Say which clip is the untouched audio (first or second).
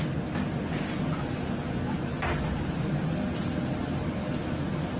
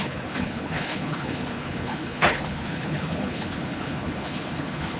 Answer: first